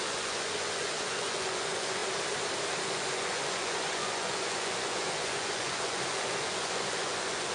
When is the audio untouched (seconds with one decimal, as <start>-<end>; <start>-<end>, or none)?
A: 2.0-2.8